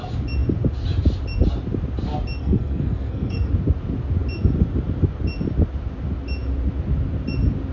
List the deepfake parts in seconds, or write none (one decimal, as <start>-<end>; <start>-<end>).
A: 2.4-3.5